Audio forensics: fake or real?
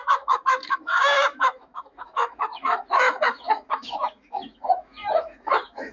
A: fake